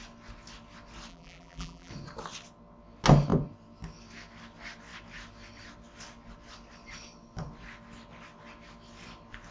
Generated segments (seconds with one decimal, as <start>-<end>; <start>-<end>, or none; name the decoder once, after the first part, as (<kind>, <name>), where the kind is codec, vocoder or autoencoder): 1.1-1.9 (vocoder, BigVGAN v2)